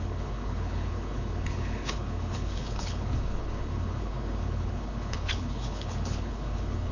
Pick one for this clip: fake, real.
fake